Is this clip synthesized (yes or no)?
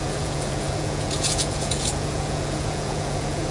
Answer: yes